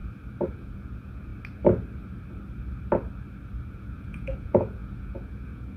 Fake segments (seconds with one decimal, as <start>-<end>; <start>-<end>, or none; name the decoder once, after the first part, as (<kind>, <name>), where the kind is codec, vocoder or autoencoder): 0.5-1.3 (vocoder, Vocos); 3.7-5.8